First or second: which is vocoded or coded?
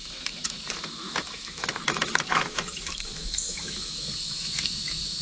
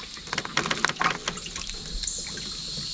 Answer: first